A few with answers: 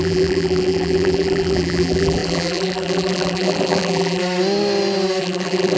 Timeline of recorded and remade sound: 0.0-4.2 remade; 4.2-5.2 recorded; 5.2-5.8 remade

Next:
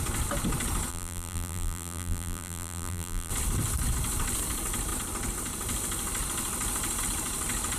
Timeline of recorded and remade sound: 0.0-0.9 recorded; 0.9-3.3 remade; 3.3-7.8 recorded

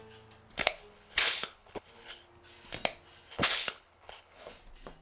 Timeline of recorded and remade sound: 0.0-0.6 recorded; 0.6-2.3 remade; 2.3-3.3 recorded; 3.3-4.5 remade; 4.5-5.0 recorded

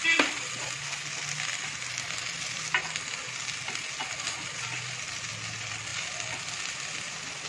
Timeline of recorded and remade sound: 0.0-7.5 recorded

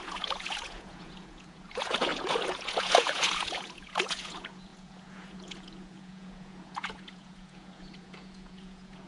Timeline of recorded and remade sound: 0.0-9.1 remade

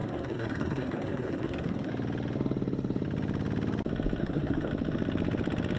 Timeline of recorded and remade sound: 0.0-1.9 remade; 1.9-4.2 recorded; 4.2-4.7 remade; 4.7-5.8 recorded